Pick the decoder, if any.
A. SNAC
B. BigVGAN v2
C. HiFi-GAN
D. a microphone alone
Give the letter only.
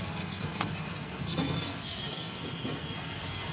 A